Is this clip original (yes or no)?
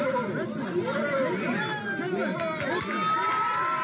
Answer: yes